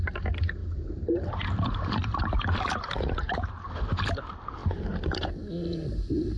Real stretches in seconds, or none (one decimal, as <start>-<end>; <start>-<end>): 0.0-6.4